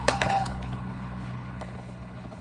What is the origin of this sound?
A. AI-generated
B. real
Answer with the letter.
A